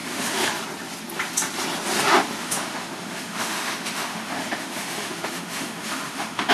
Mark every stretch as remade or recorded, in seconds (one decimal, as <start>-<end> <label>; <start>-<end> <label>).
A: 0.0-0.5 remade; 0.5-2.4 recorded; 2.4-6.5 remade